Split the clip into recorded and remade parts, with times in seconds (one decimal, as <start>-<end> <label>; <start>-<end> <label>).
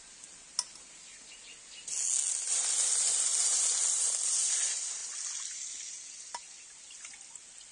0.0-7.7 recorded